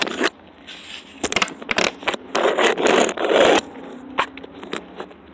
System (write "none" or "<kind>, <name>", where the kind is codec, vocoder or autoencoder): none